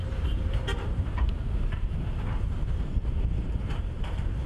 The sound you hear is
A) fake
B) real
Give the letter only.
A